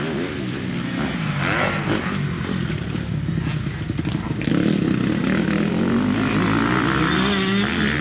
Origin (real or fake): real